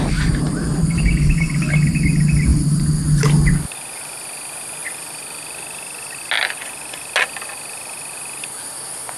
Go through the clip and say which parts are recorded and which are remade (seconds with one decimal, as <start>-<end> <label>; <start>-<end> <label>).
0.0-2.5 recorded; 2.5-3.5 remade; 3.5-9.2 recorded